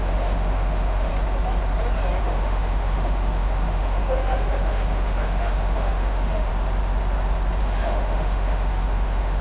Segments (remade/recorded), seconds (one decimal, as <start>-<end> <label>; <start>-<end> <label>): 0.0-1.1 remade; 1.1-2.2 recorded; 2.2-6.5 remade; 6.5-7.6 recorded; 7.6-9.4 remade